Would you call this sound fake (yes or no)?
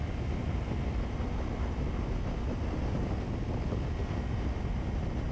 no